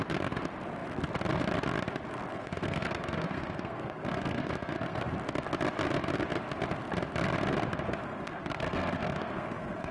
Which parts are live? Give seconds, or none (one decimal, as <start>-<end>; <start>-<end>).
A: 0.0-2.3; 5.1-8.0